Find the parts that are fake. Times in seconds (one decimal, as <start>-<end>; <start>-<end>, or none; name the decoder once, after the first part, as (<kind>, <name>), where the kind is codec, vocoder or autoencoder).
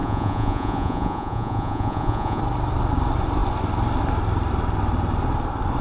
0.0-2.4 (vocoder, Vocos)